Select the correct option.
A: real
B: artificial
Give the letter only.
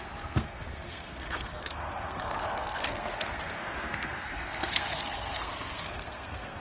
B